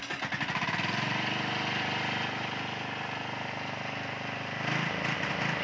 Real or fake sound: real